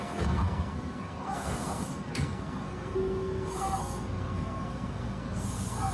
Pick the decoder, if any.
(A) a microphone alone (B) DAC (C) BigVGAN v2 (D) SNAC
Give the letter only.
D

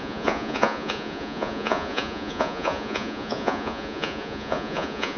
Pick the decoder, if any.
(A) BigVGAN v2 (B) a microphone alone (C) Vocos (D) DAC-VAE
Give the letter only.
C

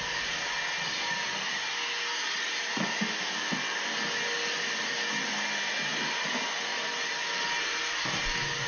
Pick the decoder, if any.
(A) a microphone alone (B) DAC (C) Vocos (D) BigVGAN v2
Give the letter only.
A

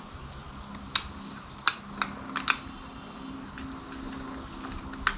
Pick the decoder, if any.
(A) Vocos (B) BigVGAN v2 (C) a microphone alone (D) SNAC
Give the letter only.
C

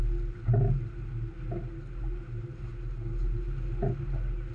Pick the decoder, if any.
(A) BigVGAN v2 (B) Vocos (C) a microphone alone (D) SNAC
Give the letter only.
C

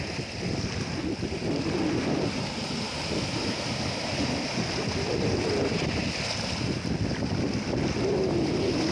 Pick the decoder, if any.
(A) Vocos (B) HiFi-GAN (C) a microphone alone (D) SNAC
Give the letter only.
C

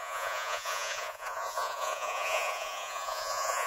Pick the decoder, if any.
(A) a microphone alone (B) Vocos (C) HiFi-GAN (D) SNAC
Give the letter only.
B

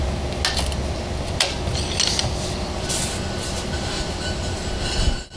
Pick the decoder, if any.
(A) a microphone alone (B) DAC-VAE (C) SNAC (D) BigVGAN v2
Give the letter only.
A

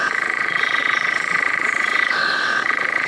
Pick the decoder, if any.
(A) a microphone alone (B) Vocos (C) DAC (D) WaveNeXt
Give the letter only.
D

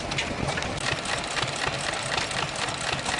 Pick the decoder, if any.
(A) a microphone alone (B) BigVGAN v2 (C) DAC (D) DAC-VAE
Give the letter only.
A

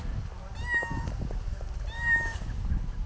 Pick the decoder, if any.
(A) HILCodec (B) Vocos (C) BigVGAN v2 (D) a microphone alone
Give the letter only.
D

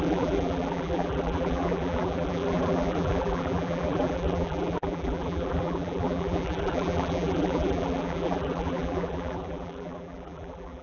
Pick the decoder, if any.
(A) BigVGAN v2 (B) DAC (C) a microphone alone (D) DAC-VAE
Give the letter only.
A